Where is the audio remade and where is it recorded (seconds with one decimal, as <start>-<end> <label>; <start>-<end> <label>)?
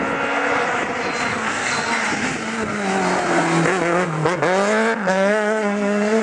0.0-1.3 recorded; 1.3-1.9 remade; 1.9-5.1 recorded; 5.1-6.2 remade